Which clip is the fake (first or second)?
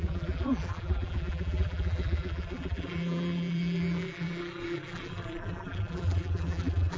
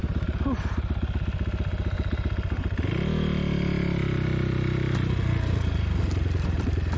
first